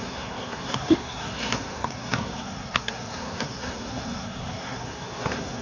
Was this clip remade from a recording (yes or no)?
yes